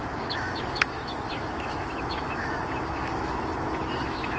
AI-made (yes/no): yes